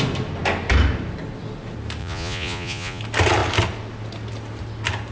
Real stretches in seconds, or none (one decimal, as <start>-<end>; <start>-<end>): 0.0-2.0; 3.0-5.1